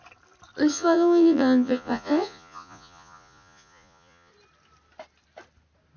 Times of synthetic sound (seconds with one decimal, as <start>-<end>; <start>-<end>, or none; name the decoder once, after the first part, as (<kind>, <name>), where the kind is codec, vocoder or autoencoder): 0.7-4.3 (vocoder, Vocos)